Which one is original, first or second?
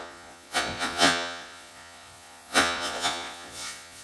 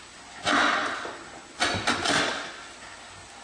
second